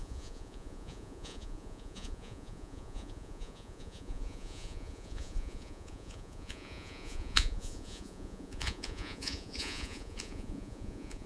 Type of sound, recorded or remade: remade